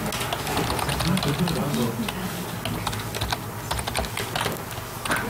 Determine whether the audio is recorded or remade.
recorded